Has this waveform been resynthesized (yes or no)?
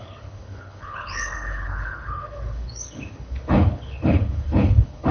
yes